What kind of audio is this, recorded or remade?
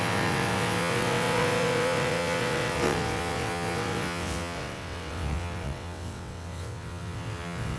remade